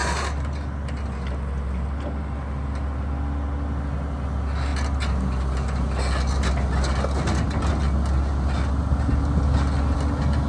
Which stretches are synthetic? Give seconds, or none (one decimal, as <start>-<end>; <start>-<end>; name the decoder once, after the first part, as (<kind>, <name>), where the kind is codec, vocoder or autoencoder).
none